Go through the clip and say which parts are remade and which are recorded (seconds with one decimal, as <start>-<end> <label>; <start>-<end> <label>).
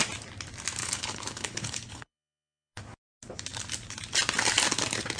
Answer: 0.0-0.8 recorded; 0.8-2.8 remade; 2.8-5.2 recorded